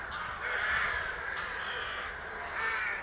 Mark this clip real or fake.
real